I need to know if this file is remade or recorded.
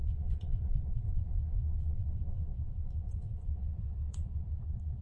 remade